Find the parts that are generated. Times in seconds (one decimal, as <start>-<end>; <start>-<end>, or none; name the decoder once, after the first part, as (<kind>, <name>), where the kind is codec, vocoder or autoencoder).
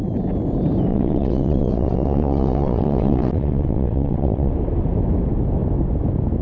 0.9-4.5 (vocoder, WaveNeXt)